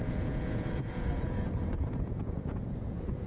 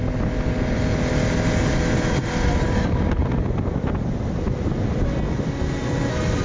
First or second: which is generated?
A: first